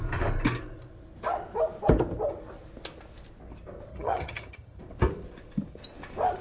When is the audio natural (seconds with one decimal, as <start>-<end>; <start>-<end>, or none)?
0.0-3.9; 4.8-6.4